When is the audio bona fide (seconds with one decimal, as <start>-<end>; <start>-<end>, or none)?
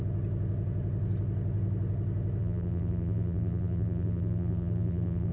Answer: 0.0-2.4